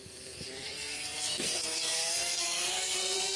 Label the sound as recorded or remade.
remade